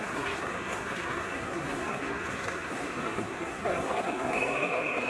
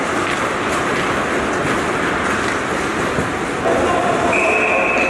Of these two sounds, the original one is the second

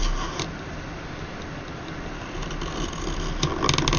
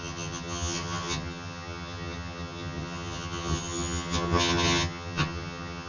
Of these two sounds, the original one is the first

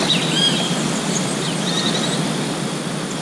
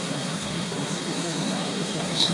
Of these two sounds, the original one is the first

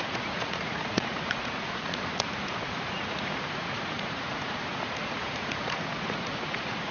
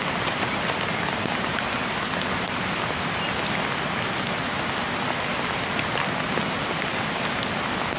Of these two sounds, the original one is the second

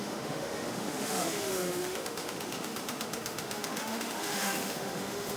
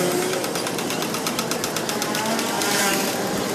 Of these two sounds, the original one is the second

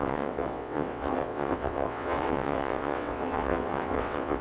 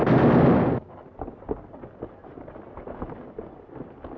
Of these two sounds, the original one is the second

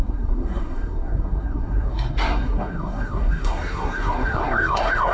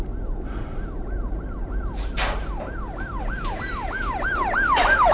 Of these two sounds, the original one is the second